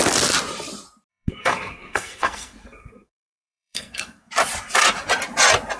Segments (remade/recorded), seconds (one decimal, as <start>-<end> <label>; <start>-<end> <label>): 0.0-1.1 recorded; 1.1-4.3 remade; 4.3-5.8 recorded